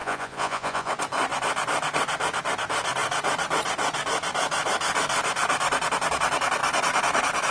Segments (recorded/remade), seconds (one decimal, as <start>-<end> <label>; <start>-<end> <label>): 0.0-0.9 remade; 0.9-7.5 recorded